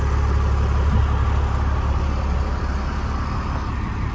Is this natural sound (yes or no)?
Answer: yes